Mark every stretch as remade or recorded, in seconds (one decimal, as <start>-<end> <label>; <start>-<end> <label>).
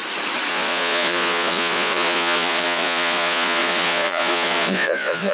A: 0.0-0.5 recorded; 0.5-5.3 remade